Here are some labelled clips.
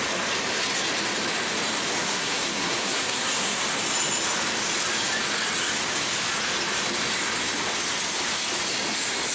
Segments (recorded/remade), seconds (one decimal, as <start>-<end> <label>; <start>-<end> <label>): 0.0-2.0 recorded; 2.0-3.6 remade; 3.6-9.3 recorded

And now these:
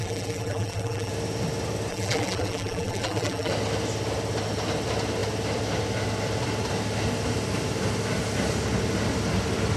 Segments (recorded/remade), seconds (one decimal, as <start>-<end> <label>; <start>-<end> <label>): 0.0-1.1 remade; 1.1-1.9 recorded; 1.9-3.5 remade; 3.5-9.8 recorded

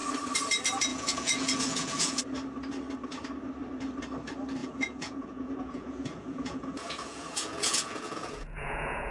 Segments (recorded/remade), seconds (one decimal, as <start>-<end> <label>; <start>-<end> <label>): 0.0-0.9 recorded; 0.9-2.2 remade; 2.2-4.6 recorded; 4.6-9.1 remade